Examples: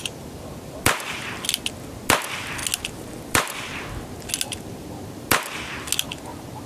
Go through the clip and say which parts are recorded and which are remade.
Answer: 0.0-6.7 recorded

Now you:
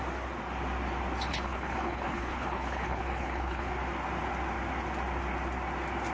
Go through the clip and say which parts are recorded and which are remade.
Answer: 0.0-1.3 recorded; 1.3-3.7 remade; 3.7-6.1 recorded

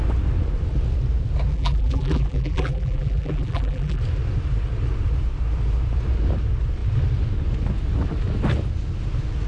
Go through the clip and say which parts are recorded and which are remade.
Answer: 0.0-1.5 recorded; 1.5-4.0 remade; 4.0-9.5 recorded

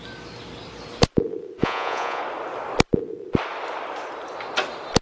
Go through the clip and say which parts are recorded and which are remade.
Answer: 0.0-1.6 recorded; 1.6-2.2 remade; 2.2-5.0 recorded

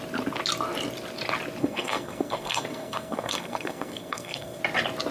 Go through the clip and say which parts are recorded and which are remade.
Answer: 0.0-1.6 recorded; 1.6-4.6 remade; 4.6-5.1 recorded

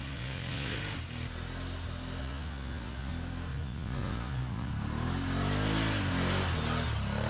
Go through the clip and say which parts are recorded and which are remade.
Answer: 0.0-0.8 remade; 0.8-2.2 recorded; 2.2-3.1 remade; 3.1-3.5 recorded; 3.5-4.7 remade; 4.7-7.3 recorded

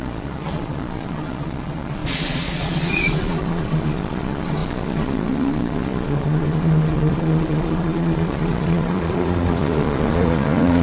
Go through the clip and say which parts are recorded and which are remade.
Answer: 0.0-10.8 remade